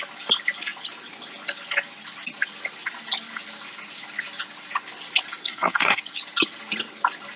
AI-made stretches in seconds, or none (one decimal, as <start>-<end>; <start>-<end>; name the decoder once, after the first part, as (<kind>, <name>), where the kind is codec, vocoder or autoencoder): 5.5-6.0 (codec, SNAC)